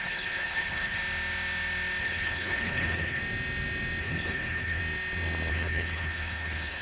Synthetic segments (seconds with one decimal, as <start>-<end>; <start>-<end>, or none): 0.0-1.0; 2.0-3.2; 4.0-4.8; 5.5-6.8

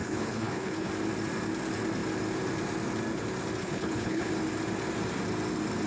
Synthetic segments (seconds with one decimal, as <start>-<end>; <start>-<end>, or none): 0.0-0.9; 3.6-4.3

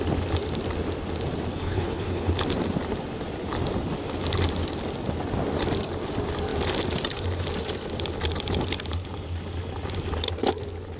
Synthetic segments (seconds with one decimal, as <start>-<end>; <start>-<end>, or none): 1.5-2.3

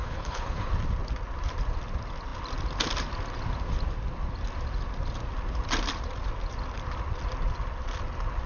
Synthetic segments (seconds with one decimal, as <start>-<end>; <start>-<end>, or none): 0.0-0.7

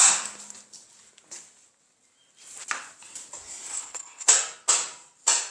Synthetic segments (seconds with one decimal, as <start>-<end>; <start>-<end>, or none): 3.7-4.3